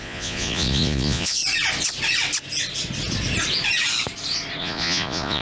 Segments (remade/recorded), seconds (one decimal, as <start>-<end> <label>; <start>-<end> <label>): 0.0-1.4 remade; 1.4-4.6 recorded; 4.6-5.4 remade